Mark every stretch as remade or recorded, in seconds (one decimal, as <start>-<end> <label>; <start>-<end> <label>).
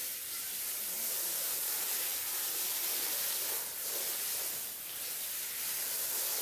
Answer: 0.0-6.4 remade